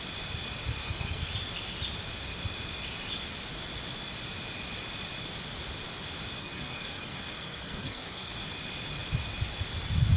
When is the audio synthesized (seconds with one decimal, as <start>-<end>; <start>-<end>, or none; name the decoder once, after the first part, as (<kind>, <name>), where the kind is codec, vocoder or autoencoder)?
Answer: 0.8-1.3 (codec, SNAC); 6.4-8.3